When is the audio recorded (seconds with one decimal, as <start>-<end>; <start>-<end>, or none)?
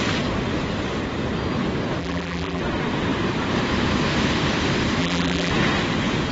0.0-2.0; 2.6-5.0; 5.5-6.3